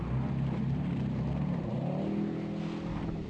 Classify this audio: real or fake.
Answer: real